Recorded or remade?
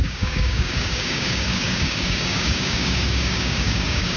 remade